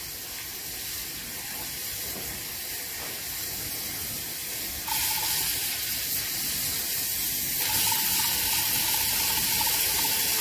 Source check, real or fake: real